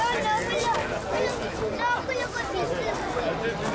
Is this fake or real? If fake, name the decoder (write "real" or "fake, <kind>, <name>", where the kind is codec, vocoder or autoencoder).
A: real